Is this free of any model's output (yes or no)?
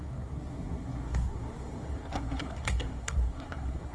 no